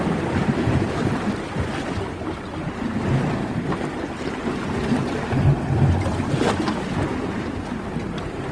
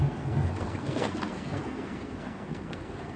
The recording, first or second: first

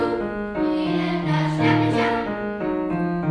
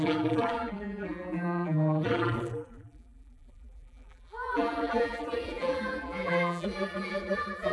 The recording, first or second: first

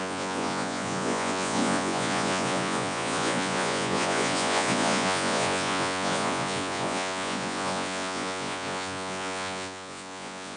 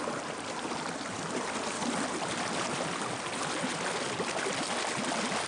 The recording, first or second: second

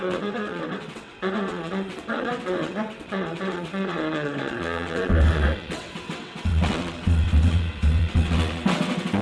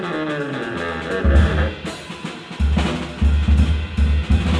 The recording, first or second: second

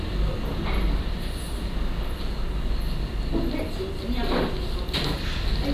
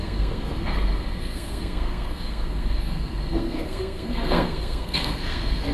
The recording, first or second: first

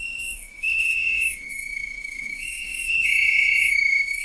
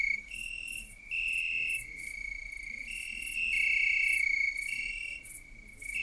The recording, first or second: second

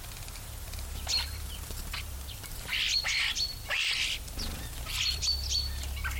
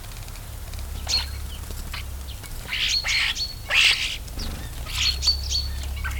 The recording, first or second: second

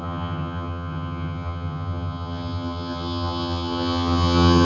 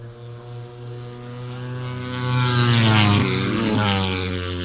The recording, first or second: second